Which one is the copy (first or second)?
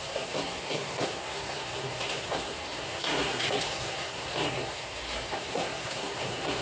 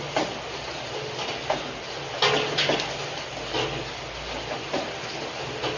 first